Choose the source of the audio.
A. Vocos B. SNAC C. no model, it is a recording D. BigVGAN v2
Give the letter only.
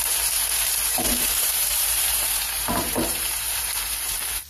D